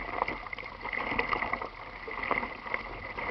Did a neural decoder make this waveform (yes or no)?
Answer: no